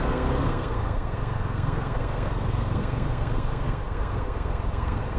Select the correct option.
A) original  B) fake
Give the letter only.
B